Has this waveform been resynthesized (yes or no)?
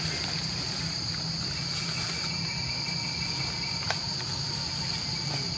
no